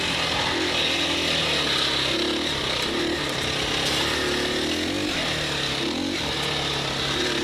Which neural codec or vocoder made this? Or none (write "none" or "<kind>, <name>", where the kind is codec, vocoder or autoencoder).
none